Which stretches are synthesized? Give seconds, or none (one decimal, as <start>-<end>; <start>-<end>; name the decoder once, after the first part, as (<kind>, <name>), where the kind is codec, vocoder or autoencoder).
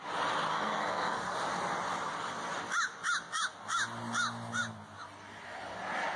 0.5-1.2 (codec, SNAC)